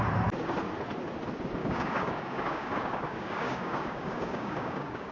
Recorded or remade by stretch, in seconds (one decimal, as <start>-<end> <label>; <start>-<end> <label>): 0.0-1.6 recorded; 1.6-5.1 remade